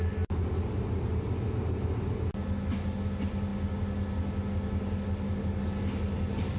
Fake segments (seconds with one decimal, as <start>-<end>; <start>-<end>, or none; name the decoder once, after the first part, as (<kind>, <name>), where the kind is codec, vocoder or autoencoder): none